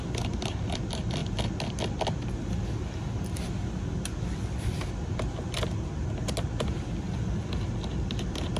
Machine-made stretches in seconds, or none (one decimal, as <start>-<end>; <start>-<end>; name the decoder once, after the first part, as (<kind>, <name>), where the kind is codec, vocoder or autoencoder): none